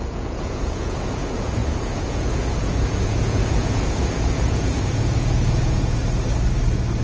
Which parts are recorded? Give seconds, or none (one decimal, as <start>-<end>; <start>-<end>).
6.0-7.0